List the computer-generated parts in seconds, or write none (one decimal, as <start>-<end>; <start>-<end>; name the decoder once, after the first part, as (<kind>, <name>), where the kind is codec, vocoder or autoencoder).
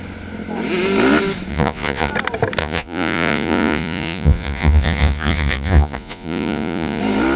1.5-2.1 (vocoder, Vocos); 2.6-7.0